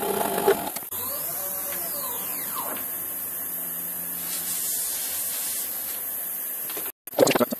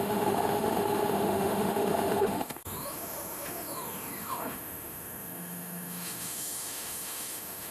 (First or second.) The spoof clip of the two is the second